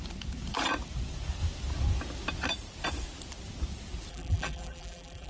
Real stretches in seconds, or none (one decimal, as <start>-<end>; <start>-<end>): 0.0-4.1